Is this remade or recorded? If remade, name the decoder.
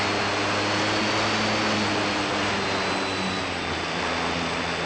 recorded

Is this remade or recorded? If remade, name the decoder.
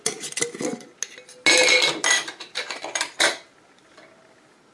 recorded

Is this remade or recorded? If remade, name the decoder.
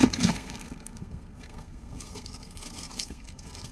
remade, codec, SNAC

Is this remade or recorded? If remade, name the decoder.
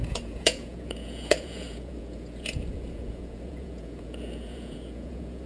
remade, vocoder, Vocos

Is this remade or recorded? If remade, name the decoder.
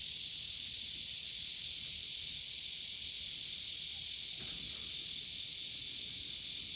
recorded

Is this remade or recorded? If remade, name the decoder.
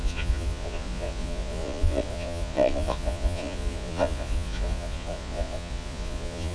remade, vocoder, Vocos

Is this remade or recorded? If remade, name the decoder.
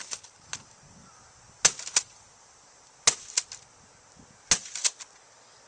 recorded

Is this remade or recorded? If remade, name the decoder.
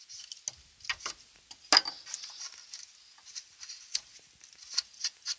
recorded